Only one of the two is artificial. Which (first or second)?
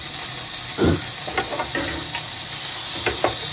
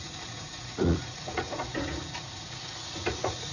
second